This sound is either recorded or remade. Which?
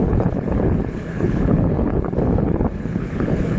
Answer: remade